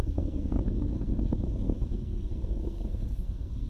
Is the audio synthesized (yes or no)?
yes